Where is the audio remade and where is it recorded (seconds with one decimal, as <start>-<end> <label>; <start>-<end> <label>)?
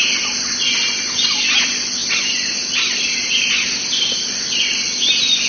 0.0-5.5 recorded